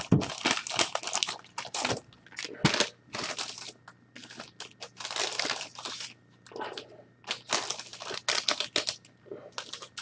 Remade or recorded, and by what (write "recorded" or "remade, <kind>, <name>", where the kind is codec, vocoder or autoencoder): recorded